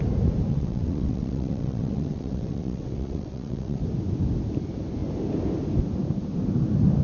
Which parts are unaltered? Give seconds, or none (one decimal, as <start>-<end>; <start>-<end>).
0.0-0.5; 3.8-7.0